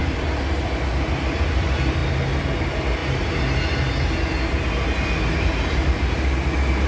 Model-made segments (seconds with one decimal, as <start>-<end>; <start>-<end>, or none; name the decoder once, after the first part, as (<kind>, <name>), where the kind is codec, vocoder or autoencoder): none